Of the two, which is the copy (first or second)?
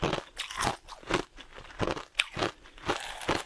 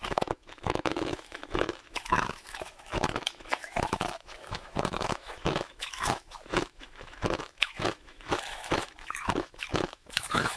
second